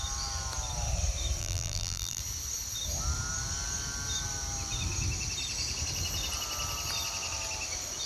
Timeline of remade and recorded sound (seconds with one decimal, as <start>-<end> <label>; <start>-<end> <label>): 0.0-1.4 recorded; 1.4-2.2 remade; 2.2-8.1 recorded